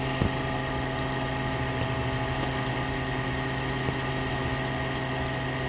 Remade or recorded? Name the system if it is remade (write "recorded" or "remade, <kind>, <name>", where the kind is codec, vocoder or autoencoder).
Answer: recorded